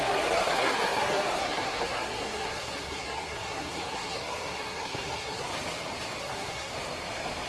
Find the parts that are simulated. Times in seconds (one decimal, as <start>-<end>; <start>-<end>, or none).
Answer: 0.0-5.5; 6.2-6.7